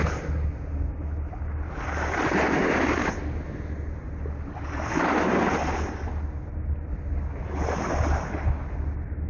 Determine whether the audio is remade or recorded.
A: recorded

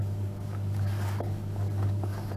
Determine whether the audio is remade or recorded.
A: remade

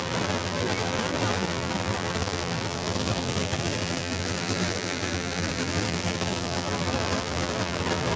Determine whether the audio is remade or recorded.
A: remade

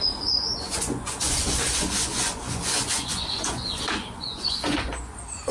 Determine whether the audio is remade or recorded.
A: remade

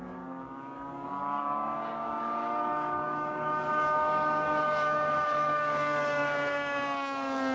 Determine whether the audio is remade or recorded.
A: remade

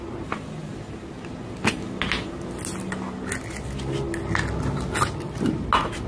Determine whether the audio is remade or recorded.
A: recorded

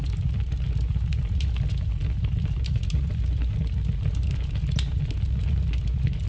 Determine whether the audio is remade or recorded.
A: recorded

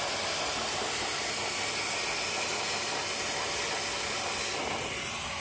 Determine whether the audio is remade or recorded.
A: recorded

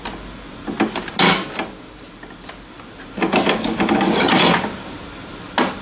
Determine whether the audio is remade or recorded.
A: recorded